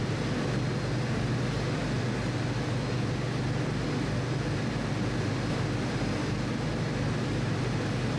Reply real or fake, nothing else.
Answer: real